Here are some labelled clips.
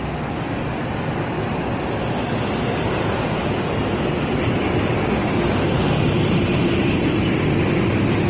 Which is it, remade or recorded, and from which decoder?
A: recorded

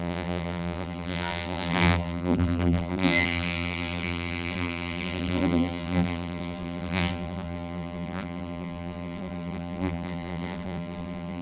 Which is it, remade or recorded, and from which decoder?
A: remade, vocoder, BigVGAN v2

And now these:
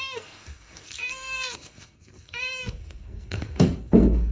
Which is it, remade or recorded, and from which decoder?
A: remade, codec, SNAC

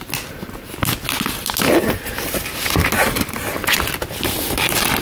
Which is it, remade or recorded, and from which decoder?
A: recorded